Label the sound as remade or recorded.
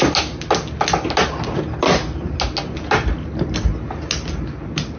recorded